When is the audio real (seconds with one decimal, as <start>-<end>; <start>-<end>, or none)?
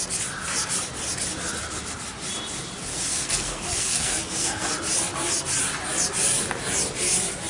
0.0-2.9; 4.7-7.5